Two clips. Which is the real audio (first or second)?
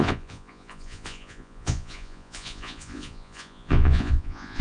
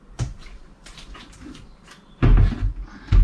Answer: second